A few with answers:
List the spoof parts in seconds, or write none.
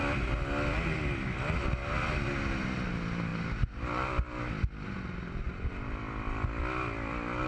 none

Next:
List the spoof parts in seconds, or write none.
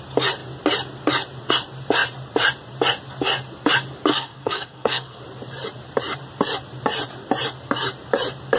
4.1-5.2 (codec, SNAC)